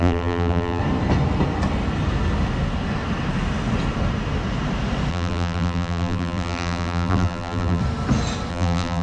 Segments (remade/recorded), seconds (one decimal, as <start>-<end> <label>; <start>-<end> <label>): 0.0-0.8 remade; 0.8-5.1 recorded; 5.1-7.8 remade; 7.8-8.5 recorded; 8.5-9.0 remade

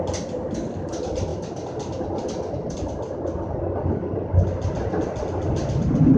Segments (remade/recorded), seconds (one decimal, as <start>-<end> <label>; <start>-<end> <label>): 0.0-6.2 recorded

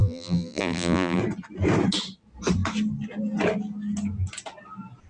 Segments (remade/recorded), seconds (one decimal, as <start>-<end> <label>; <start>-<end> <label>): 0.0-1.2 remade; 1.2-5.1 recorded

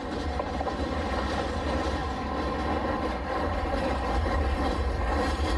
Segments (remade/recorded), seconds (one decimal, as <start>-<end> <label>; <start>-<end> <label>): 0.0-2.0 remade; 2.0-2.9 recorded; 2.9-5.6 remade

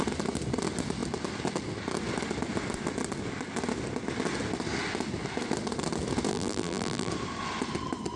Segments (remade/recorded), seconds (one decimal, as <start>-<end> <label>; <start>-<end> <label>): 0.0-6.3 recorded; 6.3-7.1 remade; 7.1-8.2 recorded